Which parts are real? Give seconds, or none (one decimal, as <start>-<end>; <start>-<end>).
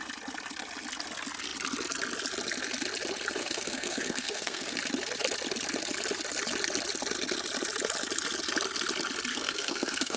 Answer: 0.0-3.4; 4.7-9.3